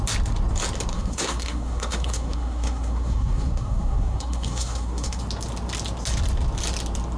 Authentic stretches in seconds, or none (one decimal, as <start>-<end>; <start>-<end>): 0.0-0.9; 5.2-7.2